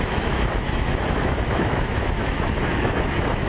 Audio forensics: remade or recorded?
remade